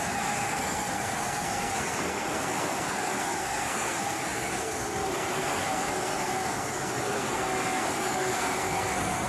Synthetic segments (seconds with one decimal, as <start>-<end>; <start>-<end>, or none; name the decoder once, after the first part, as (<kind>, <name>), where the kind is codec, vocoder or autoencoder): 0.0-9.3 (codec, SNAC)